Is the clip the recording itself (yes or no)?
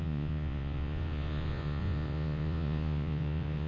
no